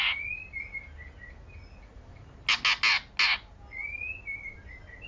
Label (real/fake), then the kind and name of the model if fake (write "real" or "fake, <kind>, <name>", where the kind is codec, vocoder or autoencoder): real